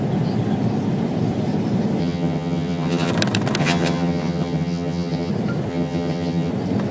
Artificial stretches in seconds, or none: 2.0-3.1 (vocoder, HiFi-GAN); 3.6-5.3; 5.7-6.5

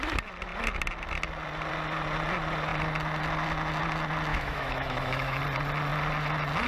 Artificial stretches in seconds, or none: 4.3-5.4 (autoencoder, DAC-VAE)

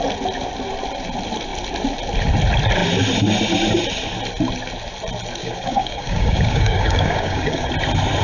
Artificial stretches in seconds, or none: 5.4-7.7 (codec, DAC)

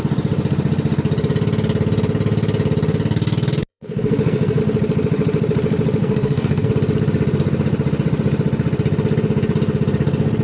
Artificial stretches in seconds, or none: 3.7-4.6 (codec, SNAC); 6.0-6.7

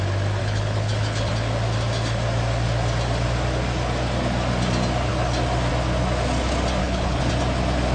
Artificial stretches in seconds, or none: 0.4-1.3 (codec, HILCodec); 6.8-7.3